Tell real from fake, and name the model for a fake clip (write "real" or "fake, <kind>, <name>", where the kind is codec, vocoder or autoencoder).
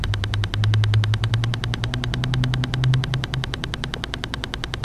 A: real